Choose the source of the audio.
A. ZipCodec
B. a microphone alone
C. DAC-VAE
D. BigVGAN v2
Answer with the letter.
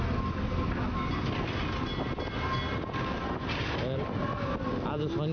B